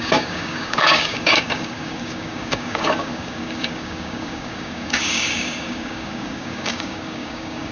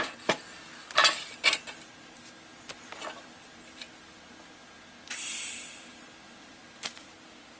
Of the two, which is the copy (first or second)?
first